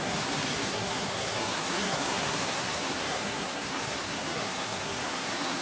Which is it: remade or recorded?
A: remade